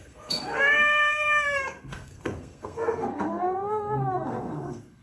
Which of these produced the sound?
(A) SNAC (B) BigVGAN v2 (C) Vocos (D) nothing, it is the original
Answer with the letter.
A